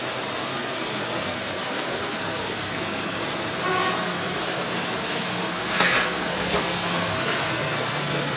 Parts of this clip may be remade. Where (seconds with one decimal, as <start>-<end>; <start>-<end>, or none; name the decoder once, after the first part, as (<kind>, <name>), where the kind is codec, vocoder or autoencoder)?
0.5-3.2 (codec, SNAC); 3.8-8.4